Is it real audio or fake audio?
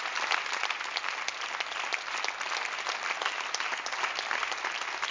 real